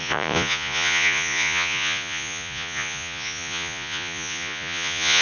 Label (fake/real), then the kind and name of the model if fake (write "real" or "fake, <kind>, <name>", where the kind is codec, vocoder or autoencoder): fake, vocoder, Vocos